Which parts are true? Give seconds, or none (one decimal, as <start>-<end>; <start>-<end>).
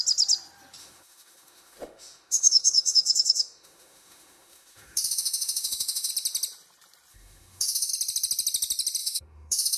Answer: 0.0-0.8; 6.1-7.1; 7.9-9.0